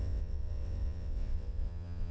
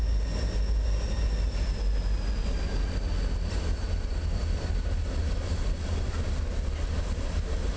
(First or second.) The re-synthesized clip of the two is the first